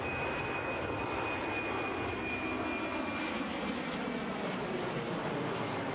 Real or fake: real